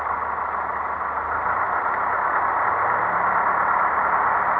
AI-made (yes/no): no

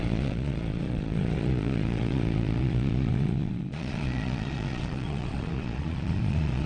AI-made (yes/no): yes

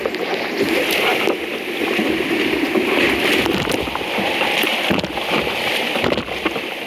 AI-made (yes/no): no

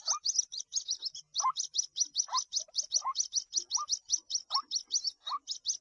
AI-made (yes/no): no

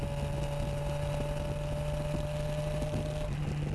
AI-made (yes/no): no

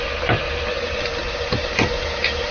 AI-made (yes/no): no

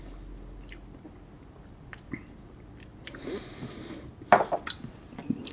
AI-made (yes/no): yes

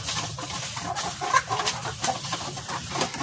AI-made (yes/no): no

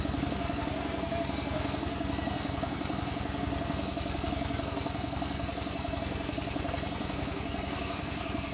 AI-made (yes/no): yes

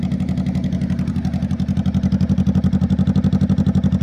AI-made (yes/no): no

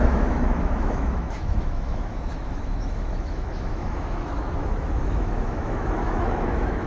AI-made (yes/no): yes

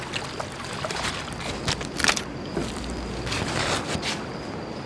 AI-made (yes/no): no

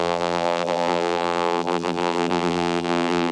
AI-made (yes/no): yes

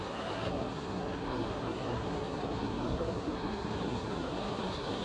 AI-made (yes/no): yes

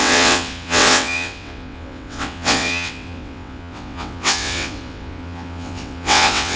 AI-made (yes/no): yes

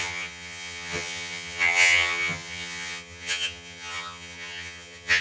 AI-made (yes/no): yes